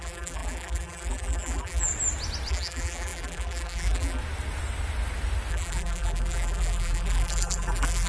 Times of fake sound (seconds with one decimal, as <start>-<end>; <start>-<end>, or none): 0.0-1.9; 2.5-4.2; 5.5-8.1